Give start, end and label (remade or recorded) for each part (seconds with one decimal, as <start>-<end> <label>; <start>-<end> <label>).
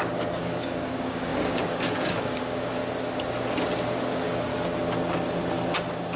0.0-2.8 remade; 2.8-3.9 recorded; 3.9-4.5 remade; 4.5-6.2 recorded